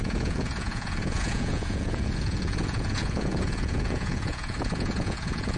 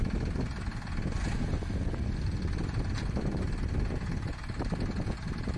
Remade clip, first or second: first